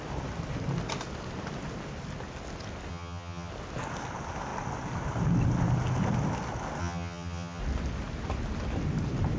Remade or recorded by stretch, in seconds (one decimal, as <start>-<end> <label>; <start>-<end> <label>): 0.0-2.9 recorded; 2.9-3.5 remade; 3.5-6.8 recorded; 6.8-7.6 remade; 7.6-9.4 recorded